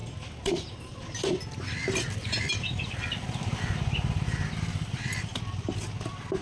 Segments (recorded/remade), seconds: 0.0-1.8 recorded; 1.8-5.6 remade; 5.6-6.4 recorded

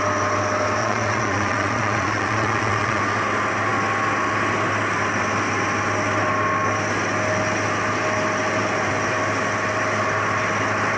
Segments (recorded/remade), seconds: 0.0-0.8 recorded; 0.8-3.0 remade; 3.0-11.0 recorded